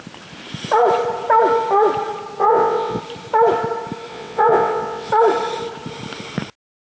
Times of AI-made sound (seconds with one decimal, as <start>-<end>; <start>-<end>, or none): 2.4-3.0; 4.1-5.1